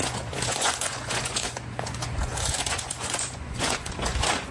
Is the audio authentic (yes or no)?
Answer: no